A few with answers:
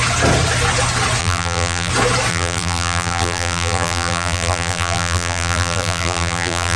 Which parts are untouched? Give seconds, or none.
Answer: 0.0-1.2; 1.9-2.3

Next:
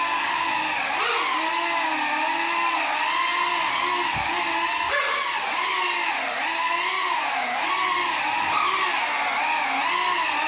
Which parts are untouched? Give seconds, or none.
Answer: 0.0-10.5